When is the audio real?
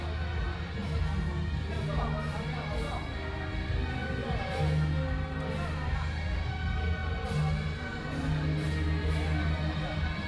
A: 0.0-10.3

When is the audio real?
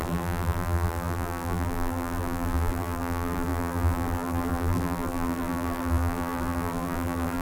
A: none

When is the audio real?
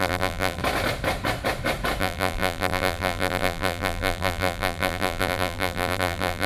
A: 0.6-2.0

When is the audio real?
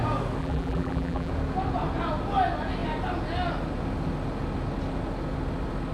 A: 0.0-0.4; 1.3-5.9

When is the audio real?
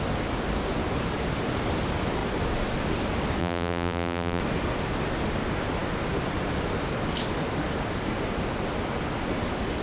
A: 0.0-3.4; 4.4-9.8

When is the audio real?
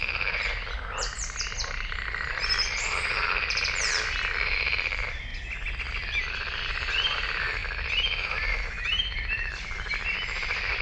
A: 5.3-6.2; 7.6-8.2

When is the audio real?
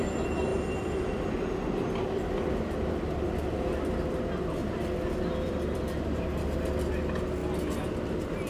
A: 0.0-0.5; 3.0-4.6; 7.0-8.5